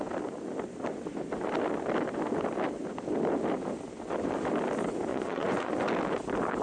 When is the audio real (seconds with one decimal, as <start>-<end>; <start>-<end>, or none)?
0.0-5.1; 5.7-6.6